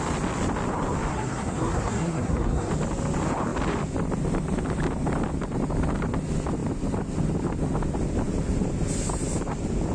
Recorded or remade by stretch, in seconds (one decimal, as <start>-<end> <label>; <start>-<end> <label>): 0.0-1.1 recorded; 1.1-2.7 remade; 2.7-9.9 recorded